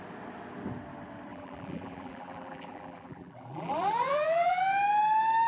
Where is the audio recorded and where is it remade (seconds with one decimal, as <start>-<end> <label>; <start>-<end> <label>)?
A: 0.0-1.3 recorded; 1.3-4.6 remade; 4.6-5.5 recorded